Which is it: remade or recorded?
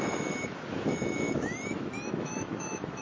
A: remade